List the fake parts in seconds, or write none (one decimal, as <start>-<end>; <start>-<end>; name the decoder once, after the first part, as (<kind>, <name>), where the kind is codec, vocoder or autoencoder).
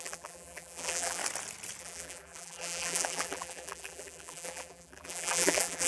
0.0-1.2 (vocoder, BigVGAN v2); 1.8-5.9